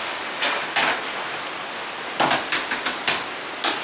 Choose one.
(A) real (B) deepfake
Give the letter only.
A